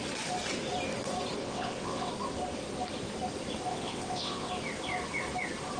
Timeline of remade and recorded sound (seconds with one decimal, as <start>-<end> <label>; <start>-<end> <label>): 0.0-1.4 recorded; 1.4-2.1 remade; 2.1-3.7 recorded; 3.7-4.5 remade; 4.5-5.8 recorded